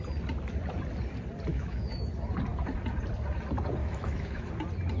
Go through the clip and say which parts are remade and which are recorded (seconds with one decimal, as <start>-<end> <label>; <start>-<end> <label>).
0.0-1.5 recorded; 1.5-2.1 remade; 2.1-3.8 recorded; 3.8-4.5 remade; 4.5-5.0 recorded